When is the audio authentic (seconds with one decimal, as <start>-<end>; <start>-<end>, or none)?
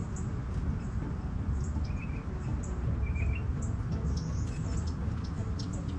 3.6-6.0